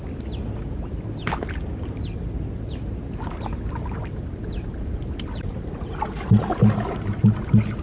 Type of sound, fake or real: real